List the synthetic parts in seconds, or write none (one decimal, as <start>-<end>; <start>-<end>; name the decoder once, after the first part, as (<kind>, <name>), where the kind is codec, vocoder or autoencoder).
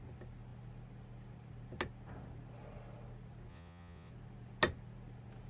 3.5-4.1 (vocoder, Vocos)